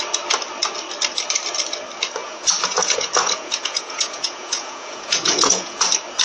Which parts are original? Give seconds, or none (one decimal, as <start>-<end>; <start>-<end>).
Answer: 0.0-2.2; 5.8-6.2

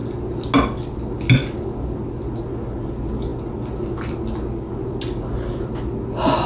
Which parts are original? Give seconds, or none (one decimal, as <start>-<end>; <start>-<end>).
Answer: 0.0-6.5

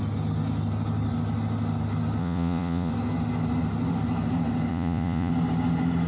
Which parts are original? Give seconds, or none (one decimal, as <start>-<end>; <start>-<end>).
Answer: 0.0-2.2; 2.9-4.7; 5.3-6.1

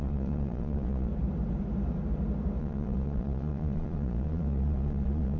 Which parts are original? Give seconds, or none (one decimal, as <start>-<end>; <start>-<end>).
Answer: 1.1-2.6

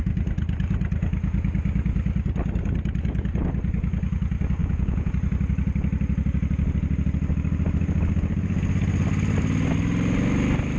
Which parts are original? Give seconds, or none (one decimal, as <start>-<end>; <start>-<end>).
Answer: 0.0-4.6; 5.1-10.8

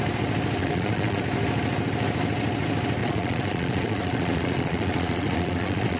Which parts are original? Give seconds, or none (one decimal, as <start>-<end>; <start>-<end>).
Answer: 0.0-0.6; 1.2-3.0

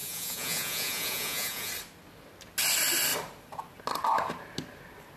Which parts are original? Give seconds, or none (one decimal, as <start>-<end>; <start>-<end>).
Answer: 1.7-5.2

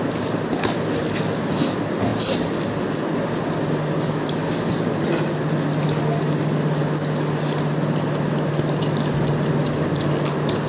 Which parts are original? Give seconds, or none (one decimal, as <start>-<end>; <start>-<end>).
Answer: 0.0-10.7